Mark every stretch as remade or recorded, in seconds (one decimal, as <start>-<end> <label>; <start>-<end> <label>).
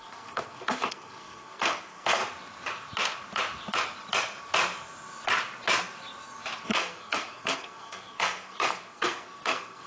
0.0-2.2 remade; 2.2-6.7 recorded; 6.7-9.9 remade